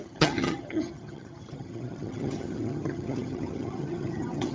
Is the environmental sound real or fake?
fake